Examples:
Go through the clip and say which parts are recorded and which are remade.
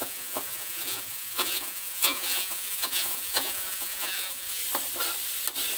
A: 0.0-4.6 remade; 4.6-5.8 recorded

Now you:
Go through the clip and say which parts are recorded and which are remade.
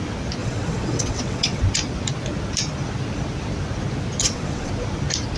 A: 0.0-0.4 recorded; 0.4-1.6 remade; 1.6-4.2 recorded; 4.2-4.7 remade; 4.7-5.4 recorded